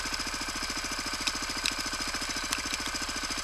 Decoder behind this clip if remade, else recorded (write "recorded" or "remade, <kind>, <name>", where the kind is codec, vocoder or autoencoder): recorded